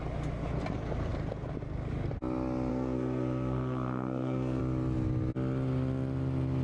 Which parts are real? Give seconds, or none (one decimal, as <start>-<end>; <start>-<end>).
0.0-2.7; 4.6-6.6